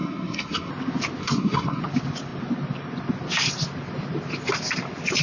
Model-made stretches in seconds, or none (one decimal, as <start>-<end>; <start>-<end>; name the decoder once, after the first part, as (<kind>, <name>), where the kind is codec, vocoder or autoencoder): 0.0-0.7 (codec, SNAC); 1.2-1.8